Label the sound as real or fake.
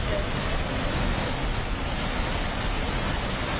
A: real